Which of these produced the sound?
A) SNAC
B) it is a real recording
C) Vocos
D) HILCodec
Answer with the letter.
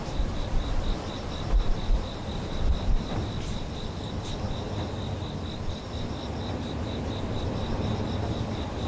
B